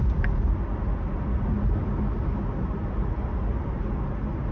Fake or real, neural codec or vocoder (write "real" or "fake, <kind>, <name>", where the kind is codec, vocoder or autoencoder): real